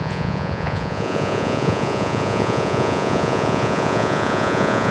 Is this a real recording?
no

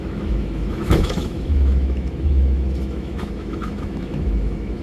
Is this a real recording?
no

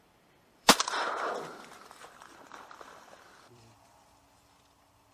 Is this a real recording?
no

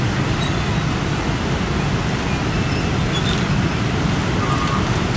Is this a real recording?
yes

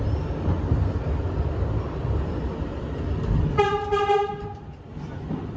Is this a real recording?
yes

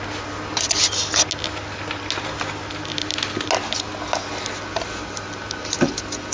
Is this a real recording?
yes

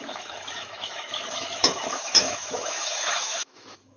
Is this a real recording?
no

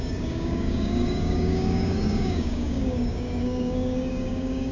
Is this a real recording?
no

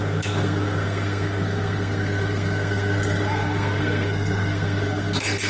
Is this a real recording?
no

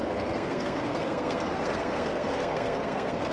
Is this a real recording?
no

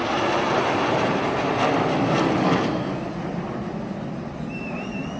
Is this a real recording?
yes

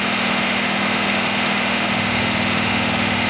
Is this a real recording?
no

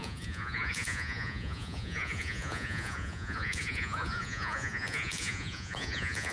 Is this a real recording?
no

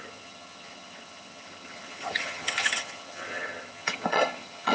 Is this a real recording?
no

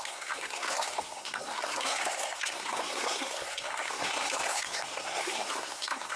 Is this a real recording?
no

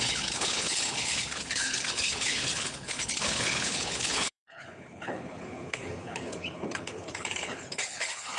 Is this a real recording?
no